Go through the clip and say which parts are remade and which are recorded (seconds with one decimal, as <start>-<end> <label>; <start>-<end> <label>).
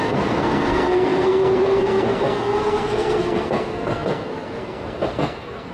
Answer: 0.0-5.7 remade